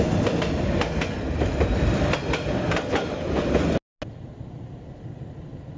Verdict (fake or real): real